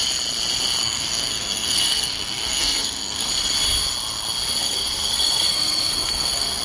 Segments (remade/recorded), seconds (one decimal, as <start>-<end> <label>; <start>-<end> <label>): 0.0-0.8 recorded; 0.8-3.3 remade; 3.3-4.6 recorded; 4.6-6.6 remade